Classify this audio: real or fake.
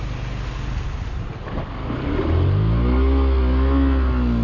real